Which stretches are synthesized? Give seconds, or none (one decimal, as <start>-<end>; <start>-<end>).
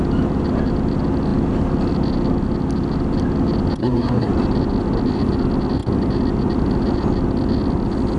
3.8-4.3